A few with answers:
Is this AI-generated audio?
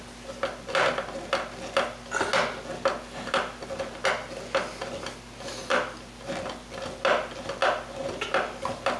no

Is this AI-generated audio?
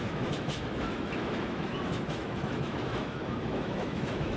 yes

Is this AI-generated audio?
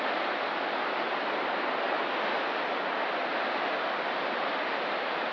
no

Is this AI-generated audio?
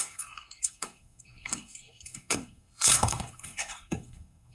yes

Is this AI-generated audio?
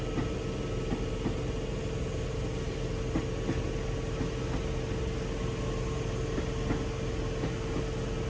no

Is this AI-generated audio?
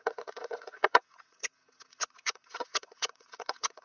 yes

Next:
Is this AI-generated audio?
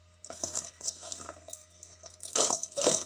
yes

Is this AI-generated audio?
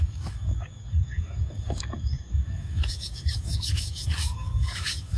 yes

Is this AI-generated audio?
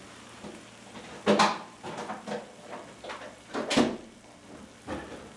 no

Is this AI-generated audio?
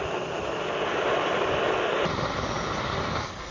no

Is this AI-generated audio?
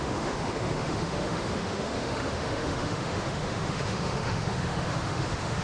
yes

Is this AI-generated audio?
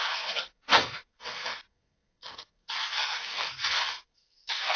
yes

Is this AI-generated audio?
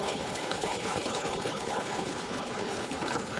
yes